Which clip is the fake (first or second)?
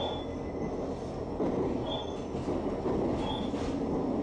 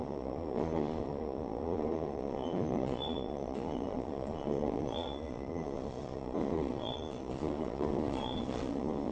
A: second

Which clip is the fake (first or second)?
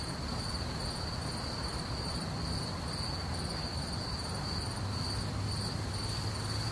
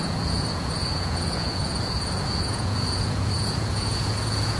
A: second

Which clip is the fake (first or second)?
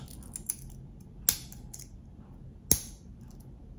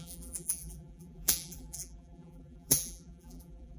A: second